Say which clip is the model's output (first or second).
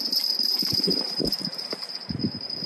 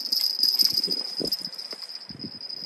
first